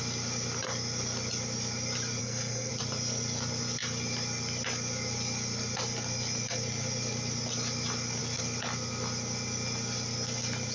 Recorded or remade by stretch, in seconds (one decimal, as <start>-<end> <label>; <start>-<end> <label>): 0.0-2.2 recorded; 2.2-2.7 remade; 2.7-10.7 recorded

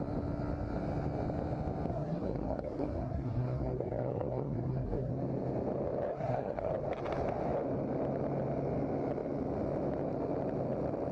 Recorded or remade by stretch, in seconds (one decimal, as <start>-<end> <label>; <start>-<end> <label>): 0.0-1.9 recorded; 1.9-5.1 remade; 5.1-6.1 recorded; 6.1-6.7 remade; 6.7-11.1 recorded

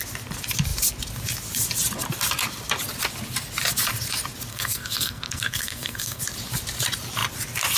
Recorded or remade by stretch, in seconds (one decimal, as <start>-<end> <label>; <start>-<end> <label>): 0.0-4.5 recorded; 4.5-6.2 remade; 6.2-7.8 recorded

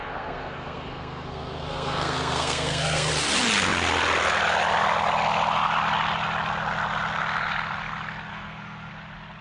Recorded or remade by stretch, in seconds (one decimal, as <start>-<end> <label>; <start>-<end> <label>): 0.0-3.1 remade; 3.1-8.3 recorded; 8.3-8.9 remade; 8.9-9.4 recorded

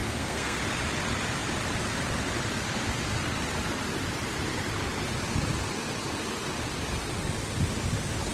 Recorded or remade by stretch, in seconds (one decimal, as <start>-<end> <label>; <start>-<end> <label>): 0.0-0.6 remade; 0.6-8.3 recorded

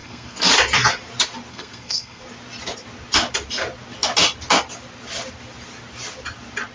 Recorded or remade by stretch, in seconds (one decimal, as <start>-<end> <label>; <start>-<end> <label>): 0.0-0.5 remade; 0.5-1.5 recorded; 1.5-2.2 remade; 2.2-6.7 recorded

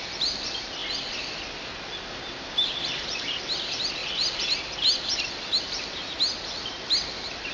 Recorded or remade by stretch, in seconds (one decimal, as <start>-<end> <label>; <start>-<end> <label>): 0.0-7.5 recorded

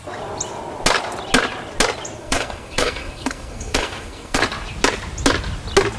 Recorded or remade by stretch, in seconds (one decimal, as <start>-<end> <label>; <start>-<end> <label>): 0.0-2.2 recorded; 2.2-4.4 remade; 4.4-6.0 recorded